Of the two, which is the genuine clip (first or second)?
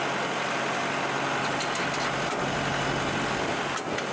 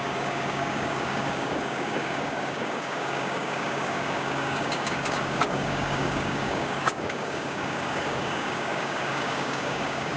first